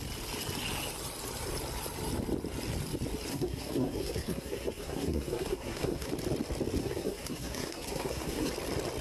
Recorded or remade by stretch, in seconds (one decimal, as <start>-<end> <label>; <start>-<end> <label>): 0.0-3.3 recorded; 3.3-6.1 remade; 6.1-6.8 recorded; 6.8-8.5 remade; 8.5-9.0 recorded